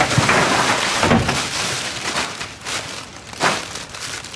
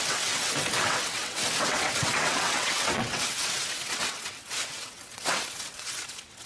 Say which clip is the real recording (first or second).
first